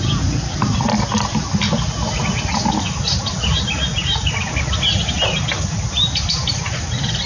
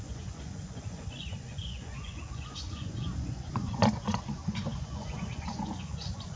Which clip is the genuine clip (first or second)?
first